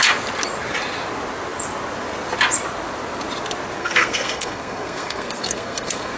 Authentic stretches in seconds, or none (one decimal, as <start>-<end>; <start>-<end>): 0.0-3.8